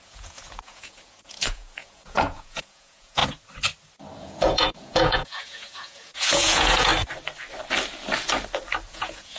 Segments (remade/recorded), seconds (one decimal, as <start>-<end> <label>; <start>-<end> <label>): 0.0-3.2 remade; 3.2-4.2 recorded; 4.2-6.9 remade; 6.9-8.9 recorded; 8.9-9.4 remade